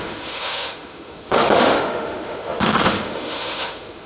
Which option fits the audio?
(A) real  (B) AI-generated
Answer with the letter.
B